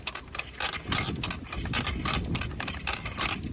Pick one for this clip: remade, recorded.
recorded